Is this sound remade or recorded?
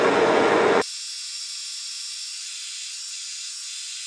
remade